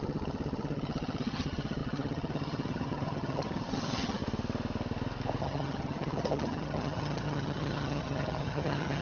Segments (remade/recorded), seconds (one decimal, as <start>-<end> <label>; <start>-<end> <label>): 0.0-4.2 remade; 4.2-5.4 recorded; 5.4-9.0 remade